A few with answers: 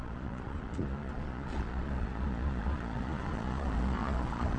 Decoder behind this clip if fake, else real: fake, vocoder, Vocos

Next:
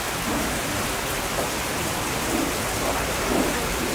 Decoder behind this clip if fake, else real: fake, vocoder, BigVGAN v2